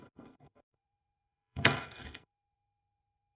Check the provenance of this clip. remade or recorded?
remade